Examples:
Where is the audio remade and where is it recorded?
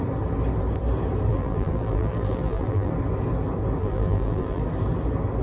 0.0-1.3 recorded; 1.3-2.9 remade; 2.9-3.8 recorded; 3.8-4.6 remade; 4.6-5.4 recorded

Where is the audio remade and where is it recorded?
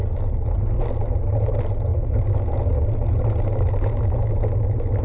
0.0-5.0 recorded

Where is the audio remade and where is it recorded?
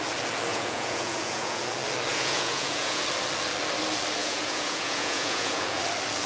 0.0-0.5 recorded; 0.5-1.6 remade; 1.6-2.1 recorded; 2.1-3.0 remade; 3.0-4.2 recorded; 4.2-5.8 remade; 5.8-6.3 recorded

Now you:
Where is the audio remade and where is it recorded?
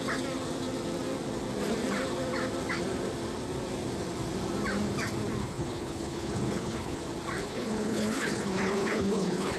0.0-5.4 recorded; 5.4-7.0 remade; 7.0-7.4 recorded; 7.4-9.6 remade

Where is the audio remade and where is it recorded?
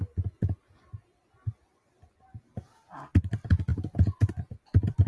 0.0-5.1 recorded